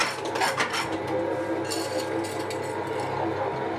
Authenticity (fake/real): real